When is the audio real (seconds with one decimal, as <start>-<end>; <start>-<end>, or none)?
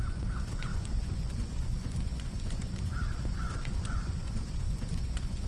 none